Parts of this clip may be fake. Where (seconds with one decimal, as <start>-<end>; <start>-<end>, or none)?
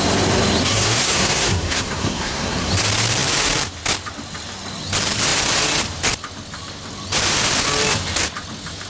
0.6-2.7